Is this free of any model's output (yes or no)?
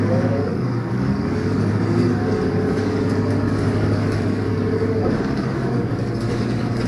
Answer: no